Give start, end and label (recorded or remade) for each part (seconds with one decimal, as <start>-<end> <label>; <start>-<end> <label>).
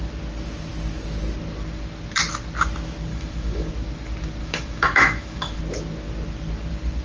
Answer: 0.0-3.1 recorded; 3.1-3.7 remade; 3.7-4.4 recorded; 4.4-5.6 remade; 5.6-7.0 recorded